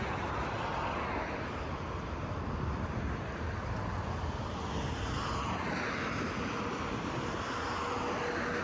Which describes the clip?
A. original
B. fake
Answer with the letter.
A